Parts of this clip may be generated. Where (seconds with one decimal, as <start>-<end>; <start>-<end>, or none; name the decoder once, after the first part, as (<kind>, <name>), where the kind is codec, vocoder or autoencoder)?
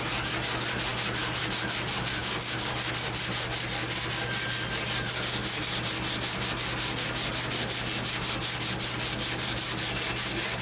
2.2-2.7 (codec, DAC)